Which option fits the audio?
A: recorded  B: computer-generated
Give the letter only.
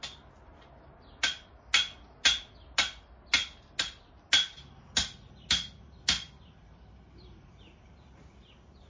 A